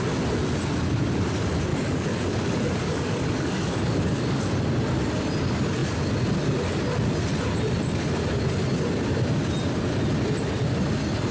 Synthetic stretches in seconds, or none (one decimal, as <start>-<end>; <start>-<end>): 1.7-4.5